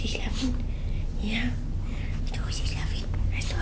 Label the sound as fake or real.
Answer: real